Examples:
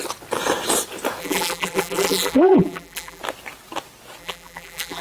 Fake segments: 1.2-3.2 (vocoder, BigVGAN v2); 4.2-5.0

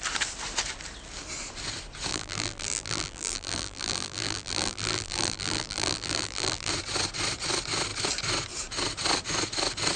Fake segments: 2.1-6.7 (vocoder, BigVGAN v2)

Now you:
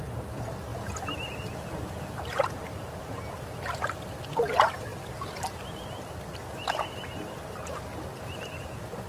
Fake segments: none

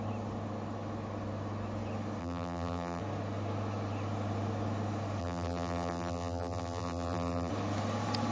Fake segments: 2.2-3.0 (vocoder, BigVGAN v2); 5.2-7.5

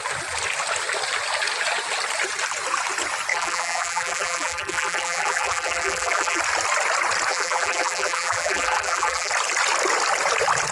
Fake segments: 3.3-6.4 (vocoder, BigVGAN v2); 7.3-9.3

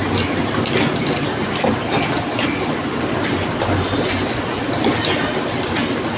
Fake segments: none